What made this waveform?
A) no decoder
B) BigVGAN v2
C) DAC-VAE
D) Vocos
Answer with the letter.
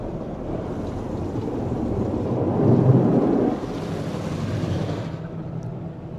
A